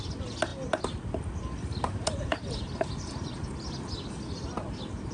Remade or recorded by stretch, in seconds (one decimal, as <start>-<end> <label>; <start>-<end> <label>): 0.0-5.1 recorded